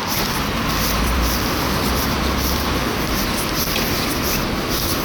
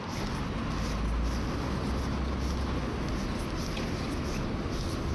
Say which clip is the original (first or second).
second